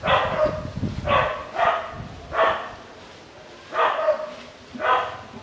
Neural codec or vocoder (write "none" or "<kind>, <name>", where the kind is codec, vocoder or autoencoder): none